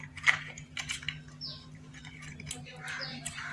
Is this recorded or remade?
remade